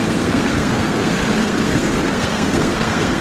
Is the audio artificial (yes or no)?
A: yes